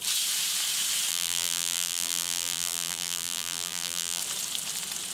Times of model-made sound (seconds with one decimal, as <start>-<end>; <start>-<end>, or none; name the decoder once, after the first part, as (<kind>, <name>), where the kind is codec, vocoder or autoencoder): 1.1-4.2 (vocoder, BigVGAN v2)